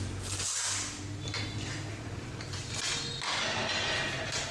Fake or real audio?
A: real